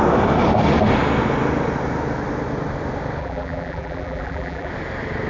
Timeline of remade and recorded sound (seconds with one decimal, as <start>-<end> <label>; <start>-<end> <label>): 0.0-3.2 recorded; 3.2-4.7 remade; 4.7-5.3 recorded